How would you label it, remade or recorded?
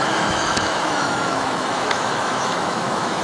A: remade